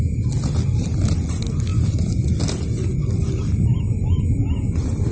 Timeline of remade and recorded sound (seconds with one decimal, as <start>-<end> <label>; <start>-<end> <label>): 0.0-1.7 recorded; 1.7-2.4 remade; 2.4-3.7 recorded; 3.7-4.3 remade; 4.3-5.1 recorded